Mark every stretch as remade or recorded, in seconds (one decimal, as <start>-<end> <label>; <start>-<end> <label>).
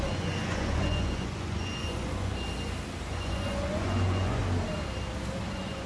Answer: 0.0-2.3 remade; 2.3-3.1 recorded; 3.1-4.4 remade; 4.4-5.5 recorded; 5.5-5.9 remade